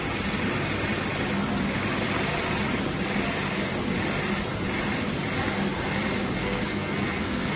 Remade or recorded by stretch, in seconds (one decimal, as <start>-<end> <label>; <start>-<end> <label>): 0.0-6.4 recorded; 6.4-7.6 remade